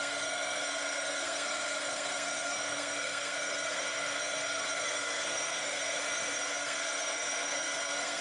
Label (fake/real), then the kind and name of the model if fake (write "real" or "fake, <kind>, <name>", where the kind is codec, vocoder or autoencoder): fake, codec, SNAC